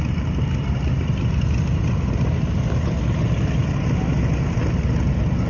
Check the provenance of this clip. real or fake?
real